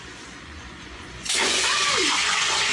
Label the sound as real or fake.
fake